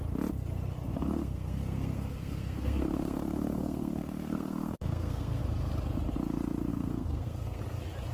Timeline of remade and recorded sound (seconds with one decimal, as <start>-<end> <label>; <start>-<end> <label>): 0.0-0.9 recorded; 0.9-5.4 remade; 5.4-6.7 recorded; 6.7-7.6 remade; 7.6-8.1 recorded